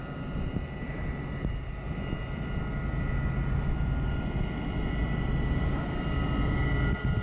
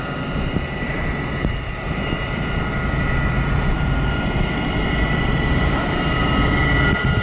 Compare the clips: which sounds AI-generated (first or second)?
second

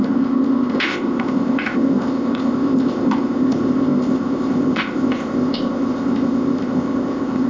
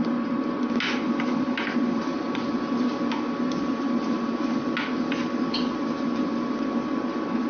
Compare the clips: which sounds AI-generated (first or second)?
first